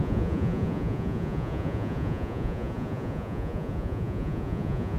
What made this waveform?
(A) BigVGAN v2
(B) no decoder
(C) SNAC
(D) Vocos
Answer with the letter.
D